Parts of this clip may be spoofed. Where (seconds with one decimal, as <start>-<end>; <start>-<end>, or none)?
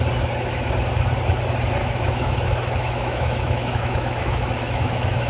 1.8-5.3